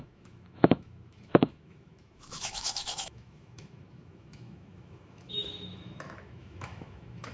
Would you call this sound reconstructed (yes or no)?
yes